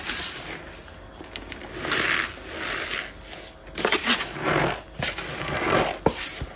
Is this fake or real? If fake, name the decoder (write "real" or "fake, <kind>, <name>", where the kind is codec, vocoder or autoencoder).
real